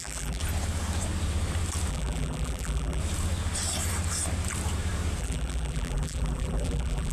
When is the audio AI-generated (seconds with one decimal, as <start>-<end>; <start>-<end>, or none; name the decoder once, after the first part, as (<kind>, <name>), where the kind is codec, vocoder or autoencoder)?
0.0-0.4 (vocoder, BigVGAN v2); 1.9-3.0; 5.2-7.1